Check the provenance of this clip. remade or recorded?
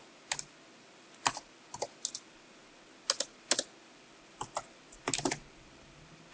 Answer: recorded